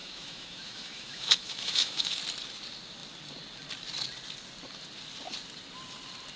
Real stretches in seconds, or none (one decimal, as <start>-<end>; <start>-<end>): 2.2-6.4